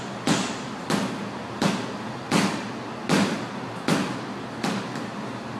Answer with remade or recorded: recorded